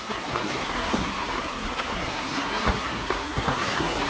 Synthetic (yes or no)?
yes